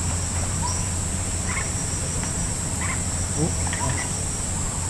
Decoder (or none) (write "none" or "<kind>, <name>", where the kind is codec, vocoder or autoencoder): vocoder, BigVGAN v2